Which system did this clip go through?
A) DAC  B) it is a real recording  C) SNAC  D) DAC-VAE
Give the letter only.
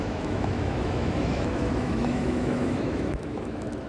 D